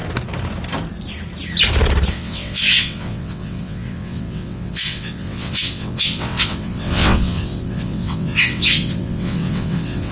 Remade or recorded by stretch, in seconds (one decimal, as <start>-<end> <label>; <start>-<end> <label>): 0.0-2.1 recorded; 2.1-10.1 remade